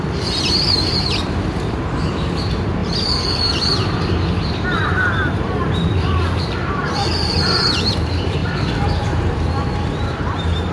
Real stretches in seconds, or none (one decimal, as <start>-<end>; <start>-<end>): 8.4-9.0